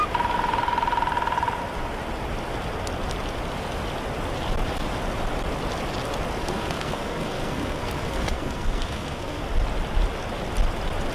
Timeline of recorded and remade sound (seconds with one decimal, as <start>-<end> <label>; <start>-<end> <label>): 0.0-6.4 recorded; 6.4-9.4 remade; 9.4-11.1 recorded